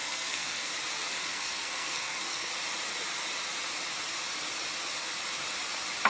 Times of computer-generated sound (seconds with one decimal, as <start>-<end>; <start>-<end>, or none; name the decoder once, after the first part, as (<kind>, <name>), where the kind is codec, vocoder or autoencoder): 0.0-0.7 (codec, SNAC); 1.1-2.5